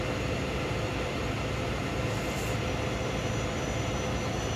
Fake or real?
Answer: real